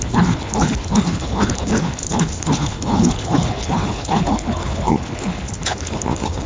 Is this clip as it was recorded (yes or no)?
no